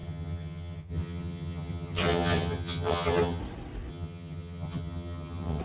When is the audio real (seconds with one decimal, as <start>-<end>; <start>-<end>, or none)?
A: 3.4-3.9